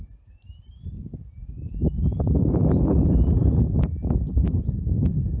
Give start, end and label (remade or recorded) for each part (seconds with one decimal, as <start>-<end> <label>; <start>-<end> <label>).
0.0-1.4 recorded; 1.4-4.6 remade; 4.6-5.4 recorded